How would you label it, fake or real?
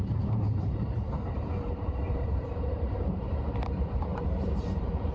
fake